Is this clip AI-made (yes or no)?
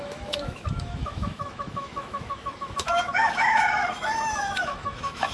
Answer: yes